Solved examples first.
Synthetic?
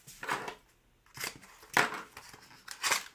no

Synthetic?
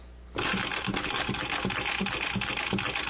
no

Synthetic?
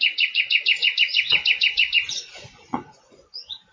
yes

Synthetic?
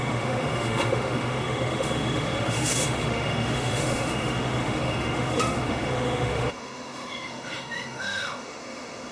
yes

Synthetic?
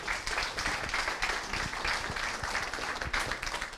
no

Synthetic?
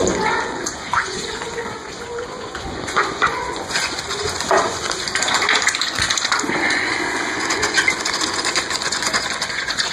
yes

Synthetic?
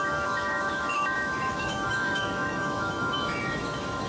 yes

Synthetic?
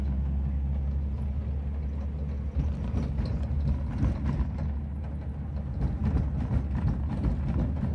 no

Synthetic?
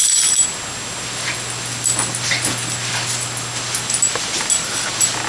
no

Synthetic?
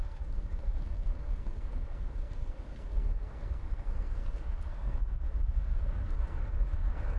yes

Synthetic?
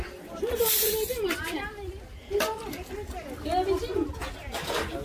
no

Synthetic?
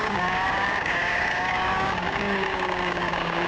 yes